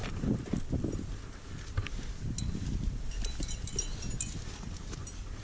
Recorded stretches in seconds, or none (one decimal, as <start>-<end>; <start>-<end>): 0.0-5.4

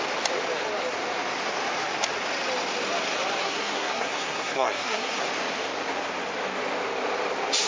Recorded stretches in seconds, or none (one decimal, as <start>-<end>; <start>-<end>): 0.0-3.4; 5.3-7.7

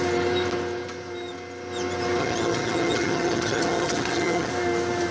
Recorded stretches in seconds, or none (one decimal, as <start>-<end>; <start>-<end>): 0.0-2.2; 4.5-5.1

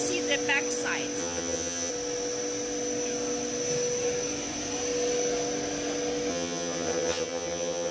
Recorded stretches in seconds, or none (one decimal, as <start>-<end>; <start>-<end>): 0.0-1.2; 1.9-6.3

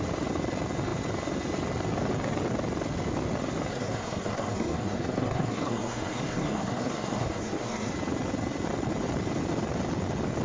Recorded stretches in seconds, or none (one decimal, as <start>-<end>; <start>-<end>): 0.0-3.7; 7.9-10.4